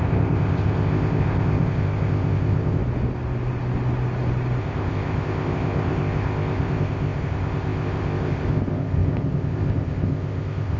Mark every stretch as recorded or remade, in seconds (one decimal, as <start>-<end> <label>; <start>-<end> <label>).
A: 0.0-2.8 remade; 2.8-4.6 recorded; 4.6-10.8 remade